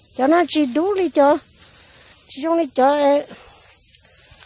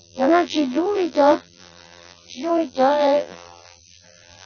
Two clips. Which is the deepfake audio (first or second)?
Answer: second